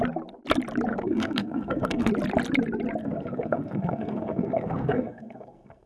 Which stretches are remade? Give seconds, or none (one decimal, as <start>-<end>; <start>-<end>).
0.9-2.1; 3.0-5.9

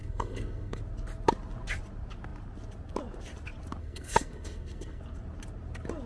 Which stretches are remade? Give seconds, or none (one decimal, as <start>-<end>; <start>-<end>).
0.0-0.8; 3.8-5.0

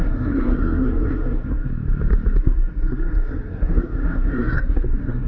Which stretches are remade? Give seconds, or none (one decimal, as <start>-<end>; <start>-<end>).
0.0-1.7; 2.4-5.3

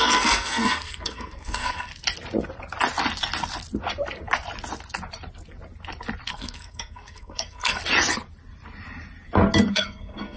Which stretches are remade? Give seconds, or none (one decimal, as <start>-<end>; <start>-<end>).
0.0-1.9; 6.3-7.8; 9.7-10.4

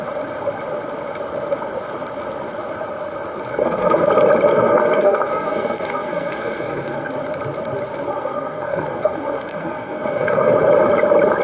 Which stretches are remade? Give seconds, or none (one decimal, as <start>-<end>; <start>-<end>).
3.5-4.1; 4.5-7.1; 8.1-10.5